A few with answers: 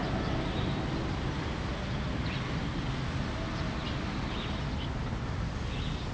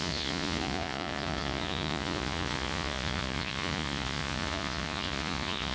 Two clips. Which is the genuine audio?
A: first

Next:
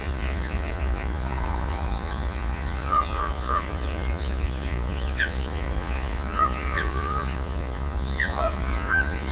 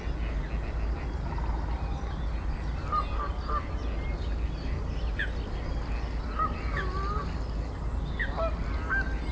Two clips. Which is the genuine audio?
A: second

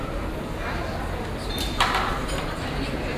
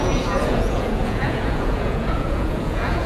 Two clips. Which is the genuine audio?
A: first